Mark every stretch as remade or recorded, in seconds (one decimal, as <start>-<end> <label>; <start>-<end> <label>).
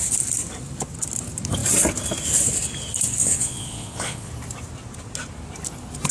0.0-3.2 recorded; 3.2-4.3 remade; 4.3-6.1 recorded